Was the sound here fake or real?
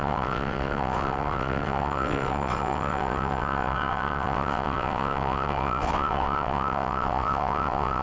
fake